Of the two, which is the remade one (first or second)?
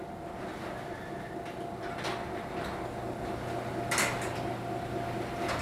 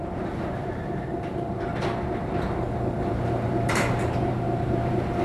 second